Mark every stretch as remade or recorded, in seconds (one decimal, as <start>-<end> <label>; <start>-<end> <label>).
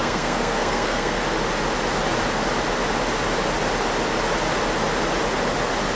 0.0-1.2 remade; 1.2-6.0 recorded